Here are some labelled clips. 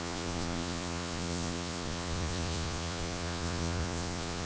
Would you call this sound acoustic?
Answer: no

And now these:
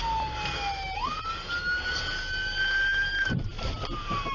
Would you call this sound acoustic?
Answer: yes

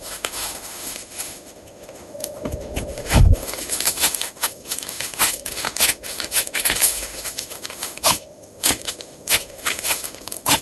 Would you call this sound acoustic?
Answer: no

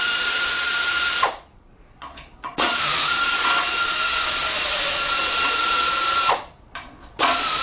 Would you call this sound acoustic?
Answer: no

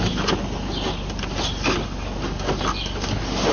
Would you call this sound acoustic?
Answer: yes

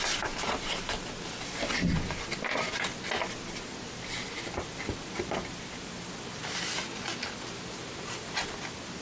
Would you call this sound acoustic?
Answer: yes